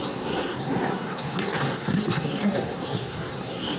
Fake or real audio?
fake